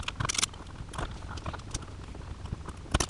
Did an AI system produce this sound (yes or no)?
no